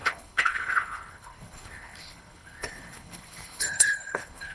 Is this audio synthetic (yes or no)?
yes